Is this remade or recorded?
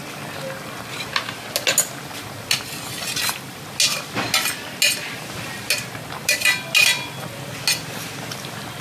recorded